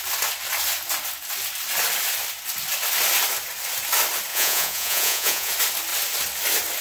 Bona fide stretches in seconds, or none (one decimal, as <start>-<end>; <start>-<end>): 0.0-4.3; 5.5-6.8